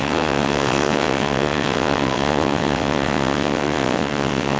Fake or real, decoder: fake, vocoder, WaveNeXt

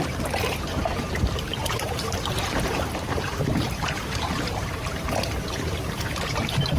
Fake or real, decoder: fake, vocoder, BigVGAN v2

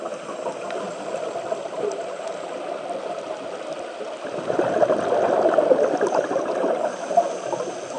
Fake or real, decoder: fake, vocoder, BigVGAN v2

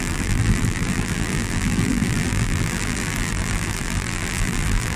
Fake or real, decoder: fake, vocoder, BigVGAN v2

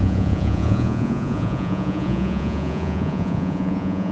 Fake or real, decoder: fake, vocoder, Vocos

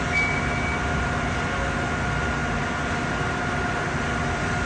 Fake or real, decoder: real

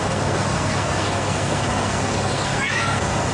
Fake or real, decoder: fake, codec, SNAC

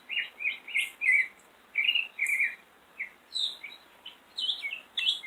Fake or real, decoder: real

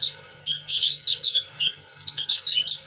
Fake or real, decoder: fake, codec, SNAC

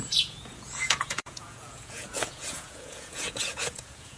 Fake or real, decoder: fake, vocoder, Vocos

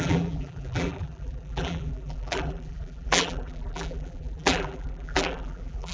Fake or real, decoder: fake, vocoder, BigVGAN v2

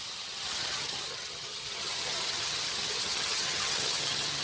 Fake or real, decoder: fake, vocoder, HiFi-GAN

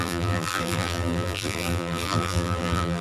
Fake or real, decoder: fake, vocoder, BigVGAN v2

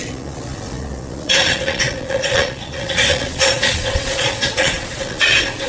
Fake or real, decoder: fake, vocoder, Vocos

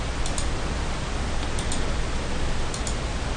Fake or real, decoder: real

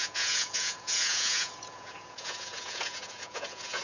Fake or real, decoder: fake, vocoder, Vocos